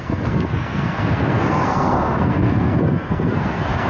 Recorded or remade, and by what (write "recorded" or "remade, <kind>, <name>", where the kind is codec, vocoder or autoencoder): remade, codec, SNAC